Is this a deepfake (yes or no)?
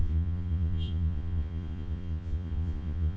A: yes